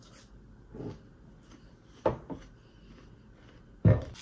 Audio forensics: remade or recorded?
recorded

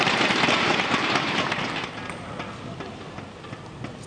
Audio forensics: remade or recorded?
recorded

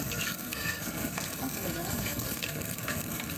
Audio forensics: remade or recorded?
remade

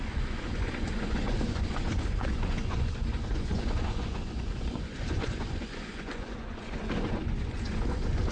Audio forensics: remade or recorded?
remade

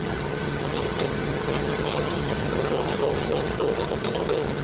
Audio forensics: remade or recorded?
remade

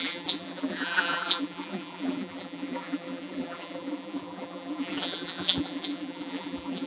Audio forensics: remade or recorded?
remade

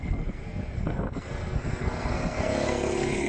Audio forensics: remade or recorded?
remade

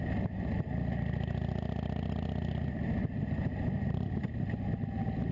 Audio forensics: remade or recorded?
recorded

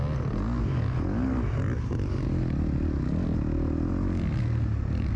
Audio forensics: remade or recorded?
recorded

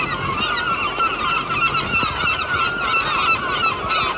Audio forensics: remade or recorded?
recorded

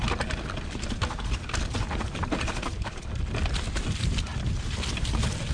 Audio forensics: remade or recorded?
recorded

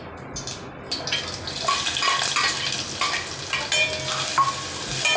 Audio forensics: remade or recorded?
recorded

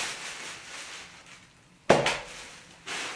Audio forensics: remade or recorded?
recorded